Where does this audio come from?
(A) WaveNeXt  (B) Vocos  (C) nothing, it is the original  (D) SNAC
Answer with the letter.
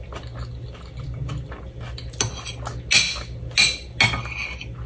C